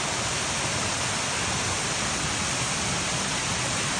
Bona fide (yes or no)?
yes